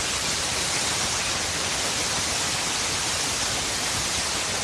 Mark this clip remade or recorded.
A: recorded